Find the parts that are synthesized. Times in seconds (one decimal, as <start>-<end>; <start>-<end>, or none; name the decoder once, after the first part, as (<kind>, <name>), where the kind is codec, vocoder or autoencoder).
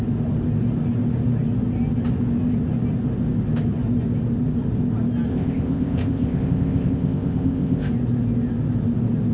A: 5.3-7.9 (codec, ZipCodec)